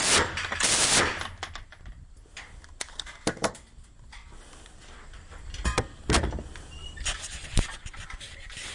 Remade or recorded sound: recorded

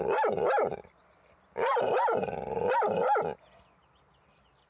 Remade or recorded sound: recorded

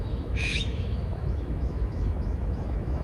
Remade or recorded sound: remade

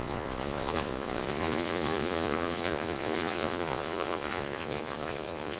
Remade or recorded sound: remade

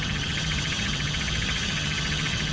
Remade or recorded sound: remade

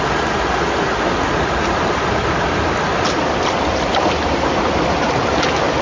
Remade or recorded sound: recorded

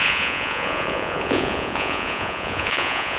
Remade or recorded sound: remade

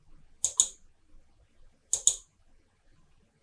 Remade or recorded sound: recorded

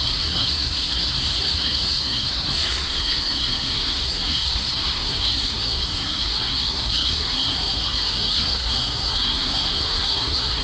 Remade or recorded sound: remade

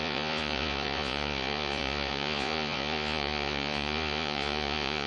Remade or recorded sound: remade